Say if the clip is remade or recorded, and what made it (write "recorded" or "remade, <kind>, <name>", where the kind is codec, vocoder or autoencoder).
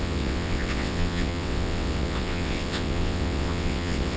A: remade, vocoder, WaveNeXt